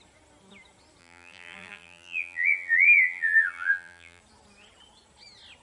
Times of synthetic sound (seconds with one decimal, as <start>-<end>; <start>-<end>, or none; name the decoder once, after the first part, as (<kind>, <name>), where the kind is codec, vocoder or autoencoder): 1.0-4.2 (vocoder, BigVGAN v2)